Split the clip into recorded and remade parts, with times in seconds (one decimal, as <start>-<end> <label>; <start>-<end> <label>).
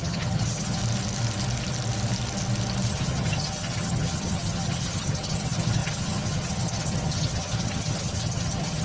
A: 0.0-0.8 remade; 0.8-2.9 recorded; 2.9-8.8 remade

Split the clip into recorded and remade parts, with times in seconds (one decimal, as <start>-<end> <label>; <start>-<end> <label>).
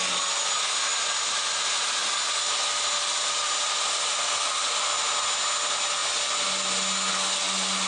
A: 0.0-7.9 recorded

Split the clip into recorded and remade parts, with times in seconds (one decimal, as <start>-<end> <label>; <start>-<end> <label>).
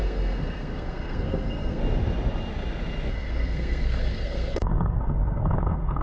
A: 0.0-1.8 remade; 1.8-3.1 recorded; 3.1-6.0 remade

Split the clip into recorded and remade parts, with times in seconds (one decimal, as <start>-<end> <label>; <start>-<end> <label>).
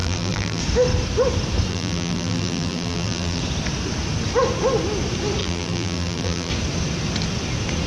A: 0.0-0.6 remade; 0.6-1.7 recorded; 1.7-3.4 remade; 3.4-5.4 recorded; 5.4-6.5 remade; 6.5-7.9 recorded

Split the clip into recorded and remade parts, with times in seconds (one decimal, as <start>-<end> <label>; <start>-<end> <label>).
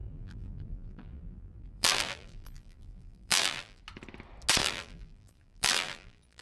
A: 0.0-3.8 remade; 3.8-4.6 recorded; 4.6-6.4 remade